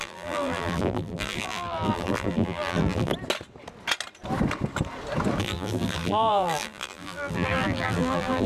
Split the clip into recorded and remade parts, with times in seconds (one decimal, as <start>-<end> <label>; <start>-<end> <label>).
0.0-3.1 remade; 3.1-5.4 recorded; 5.4-8.5 remade

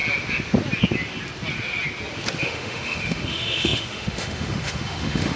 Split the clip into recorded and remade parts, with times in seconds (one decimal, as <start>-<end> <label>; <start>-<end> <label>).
0.0-2.4 recorded; 2.4-5.4 remade

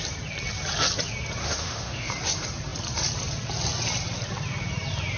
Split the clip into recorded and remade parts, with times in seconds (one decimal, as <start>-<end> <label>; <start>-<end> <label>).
0.0-1.4 recorded; 1.4-2.1 remade; 2.1-5.2 recorded

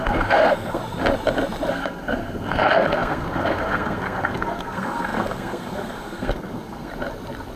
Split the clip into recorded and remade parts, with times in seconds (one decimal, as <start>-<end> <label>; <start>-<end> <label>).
0.0-0.8 remade; 0.8-1.7 recorded; 1.7-6.9 remade; 6.9-7.6 recorded

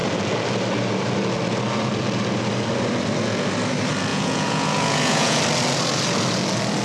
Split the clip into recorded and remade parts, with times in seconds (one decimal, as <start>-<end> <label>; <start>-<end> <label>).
0.0-4.1 recorded; 4.1-5.4 remade; 5.4-6.8 recorded

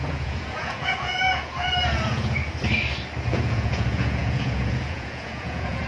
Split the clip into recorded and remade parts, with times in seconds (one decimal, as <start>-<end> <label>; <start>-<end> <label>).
0.0-2.4 remade; 2.4-3.3 recorded; 3.3-5.9 remade

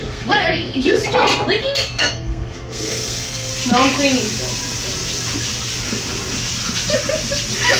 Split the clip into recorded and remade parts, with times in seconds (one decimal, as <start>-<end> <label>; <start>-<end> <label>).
0.0-1.0 remade; 1.0-1.6 recorded; 1.6-3.5 remade; 3.5-7.8 recorded